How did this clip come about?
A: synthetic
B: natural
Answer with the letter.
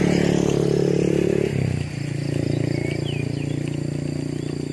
B